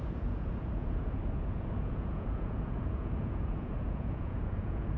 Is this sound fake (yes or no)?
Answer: yes